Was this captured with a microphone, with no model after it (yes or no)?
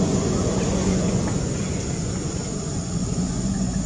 no